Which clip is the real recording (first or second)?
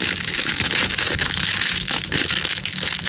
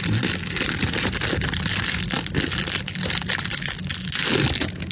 second